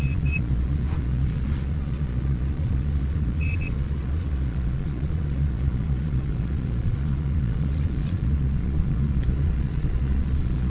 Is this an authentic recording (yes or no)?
no